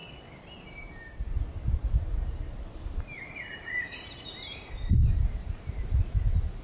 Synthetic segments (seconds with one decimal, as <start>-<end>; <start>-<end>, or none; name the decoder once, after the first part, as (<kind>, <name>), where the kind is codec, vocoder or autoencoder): 0.8-6.6 (vocoder, BigVGAN v2)